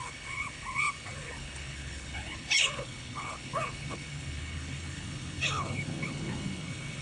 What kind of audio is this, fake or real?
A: fake